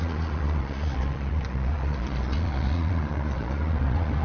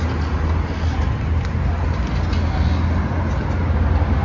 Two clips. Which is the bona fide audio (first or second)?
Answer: second